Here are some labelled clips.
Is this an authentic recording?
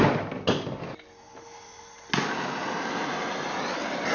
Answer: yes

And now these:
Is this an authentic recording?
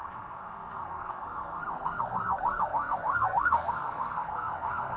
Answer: no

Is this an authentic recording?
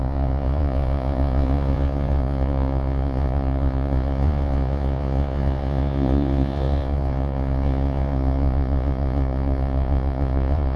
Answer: no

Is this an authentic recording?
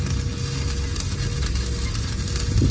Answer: yes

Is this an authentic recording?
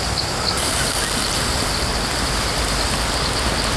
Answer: yes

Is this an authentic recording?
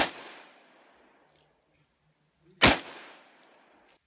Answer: yes